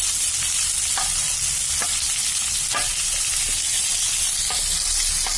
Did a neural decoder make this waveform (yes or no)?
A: no